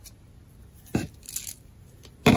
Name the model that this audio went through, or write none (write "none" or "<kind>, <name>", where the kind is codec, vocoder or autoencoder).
none